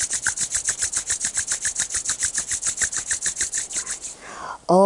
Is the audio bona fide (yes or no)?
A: yes